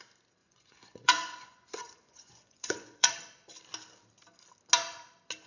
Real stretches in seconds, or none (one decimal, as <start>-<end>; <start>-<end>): 0.0-0.4; 3.1-5.5